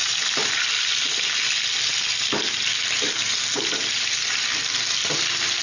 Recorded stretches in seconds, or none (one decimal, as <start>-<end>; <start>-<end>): 0.0-5.6